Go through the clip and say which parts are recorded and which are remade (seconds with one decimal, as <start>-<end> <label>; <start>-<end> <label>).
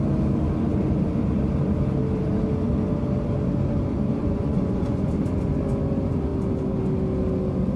0.0-4.2 recorded; 4.2-5.2 remade; 5.2-7.8 recorded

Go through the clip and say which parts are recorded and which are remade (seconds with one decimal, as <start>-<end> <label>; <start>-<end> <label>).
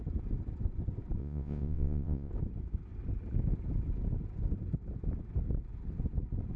0.0-1.2 recorded; 1.2-2.3 remade; 2.3-6.6 recorded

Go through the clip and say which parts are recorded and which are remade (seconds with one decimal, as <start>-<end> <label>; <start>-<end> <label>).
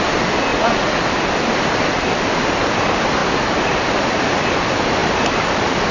0.0-0.5 recorded; 0.5-1.0 remade; 1.0-5.9 recorded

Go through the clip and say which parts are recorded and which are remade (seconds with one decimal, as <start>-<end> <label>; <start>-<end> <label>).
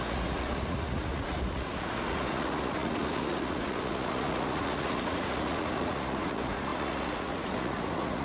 0.0-8.2 remade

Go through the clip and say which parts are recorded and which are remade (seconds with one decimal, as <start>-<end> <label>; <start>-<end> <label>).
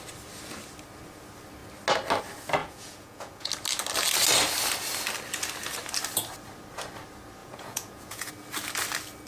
0.0-2.6 recorded; 2.6-3.5 remade; 3.5-7.4 recorded; 7.4-8.3 remade; 8.3-9.3 recorded